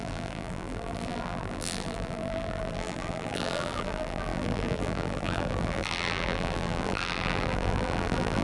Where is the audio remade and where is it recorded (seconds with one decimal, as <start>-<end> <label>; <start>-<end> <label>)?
0.0-8.4 remade